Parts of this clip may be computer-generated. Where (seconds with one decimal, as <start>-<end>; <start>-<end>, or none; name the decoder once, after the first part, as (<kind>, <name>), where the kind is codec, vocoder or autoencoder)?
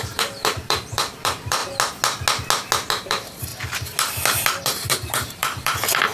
0.0-1.6 (vocoder, BigVGAN v2); 2.9-3.5; 4.6-6.1